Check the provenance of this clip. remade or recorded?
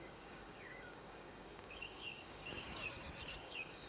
remade